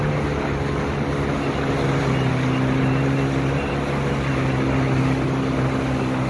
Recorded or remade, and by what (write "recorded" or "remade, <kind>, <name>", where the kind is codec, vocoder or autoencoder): recorded